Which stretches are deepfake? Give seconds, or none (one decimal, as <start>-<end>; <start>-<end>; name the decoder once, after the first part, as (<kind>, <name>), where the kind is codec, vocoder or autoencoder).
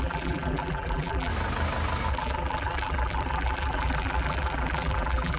0.0-1.3 (vocoder, BigVGAN v2); 2.1-5.4